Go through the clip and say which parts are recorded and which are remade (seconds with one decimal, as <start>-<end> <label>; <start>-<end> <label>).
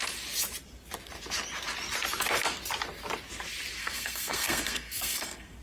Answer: 0.0-3.8 recorded; 3.8-5.6 remade